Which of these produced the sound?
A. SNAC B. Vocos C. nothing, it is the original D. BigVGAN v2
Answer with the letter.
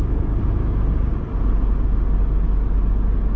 C